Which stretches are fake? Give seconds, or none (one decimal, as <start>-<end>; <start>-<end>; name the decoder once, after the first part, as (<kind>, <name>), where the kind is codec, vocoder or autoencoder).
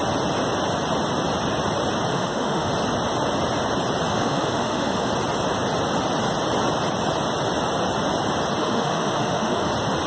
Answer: 2.1-2.7 (autoencoder, DAC-VAE); 4.1-5.1; 8.6-9.7